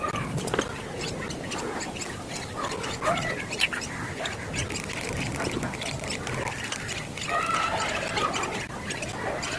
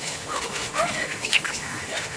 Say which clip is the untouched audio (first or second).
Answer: first